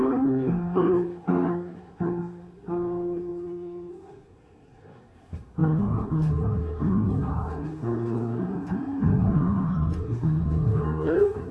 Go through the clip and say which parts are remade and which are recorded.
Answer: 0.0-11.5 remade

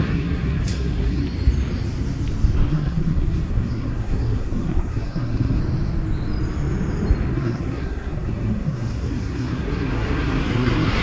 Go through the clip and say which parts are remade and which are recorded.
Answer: 0.0-1.2 remade; 1.2-2.7 recorded; 2.7-5.6 remade; 5.6-7.3 recorded; 7.3-11.0 remade